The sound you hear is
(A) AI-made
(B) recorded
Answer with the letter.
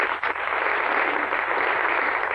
B